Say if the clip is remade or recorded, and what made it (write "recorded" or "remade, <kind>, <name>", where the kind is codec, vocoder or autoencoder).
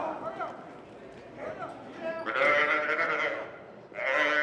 recorded